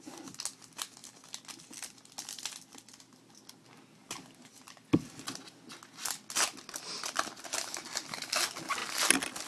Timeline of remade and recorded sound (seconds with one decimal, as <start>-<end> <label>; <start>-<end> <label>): 0.0-9.5 recorded